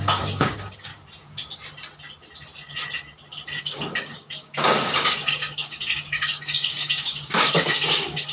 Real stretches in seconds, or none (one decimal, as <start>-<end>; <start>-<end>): 0.9-3.6